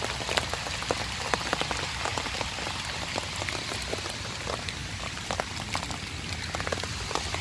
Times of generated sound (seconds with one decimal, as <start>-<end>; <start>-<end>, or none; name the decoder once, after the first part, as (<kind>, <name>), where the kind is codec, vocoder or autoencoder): none